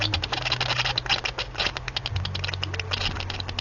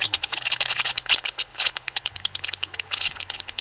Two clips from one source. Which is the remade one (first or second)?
second